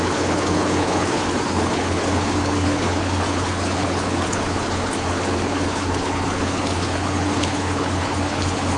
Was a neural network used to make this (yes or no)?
yes